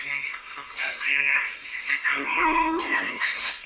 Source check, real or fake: fake